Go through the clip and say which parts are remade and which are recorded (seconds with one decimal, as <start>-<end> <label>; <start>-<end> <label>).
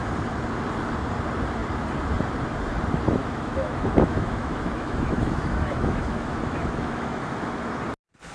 0.0-3.2 recorded; 3.2-7.7 remade; 7.7-8.3 recorded